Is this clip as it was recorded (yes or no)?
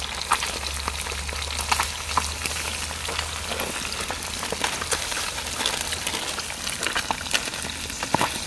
yes